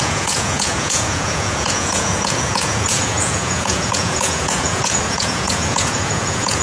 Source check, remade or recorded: remade